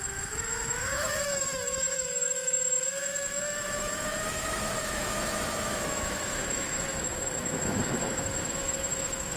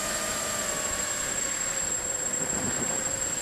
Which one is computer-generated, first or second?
first